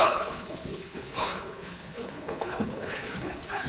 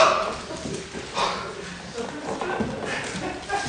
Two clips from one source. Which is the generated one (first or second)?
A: first